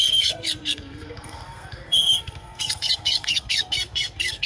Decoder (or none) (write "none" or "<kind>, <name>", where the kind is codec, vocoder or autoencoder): codec, SNAC